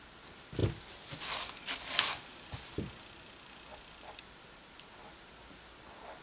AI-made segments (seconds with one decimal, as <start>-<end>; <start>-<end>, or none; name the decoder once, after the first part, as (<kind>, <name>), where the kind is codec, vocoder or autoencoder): none